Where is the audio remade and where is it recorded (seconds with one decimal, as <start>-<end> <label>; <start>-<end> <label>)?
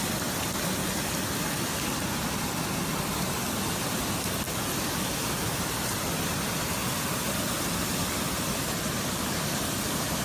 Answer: 0.0-10.2 recorded